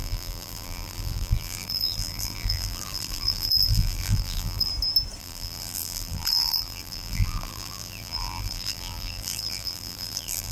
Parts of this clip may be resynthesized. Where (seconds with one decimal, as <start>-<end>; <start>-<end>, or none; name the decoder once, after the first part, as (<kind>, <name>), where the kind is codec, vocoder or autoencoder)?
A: 0.0-4.7 (vocoder, BigVGAN v2); 5.2-10.5